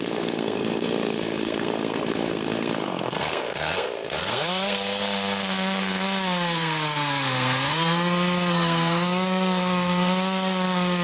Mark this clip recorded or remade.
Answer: remade